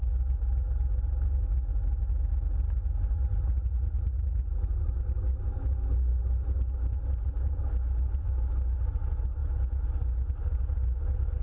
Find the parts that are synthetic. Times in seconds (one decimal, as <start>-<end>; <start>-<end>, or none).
none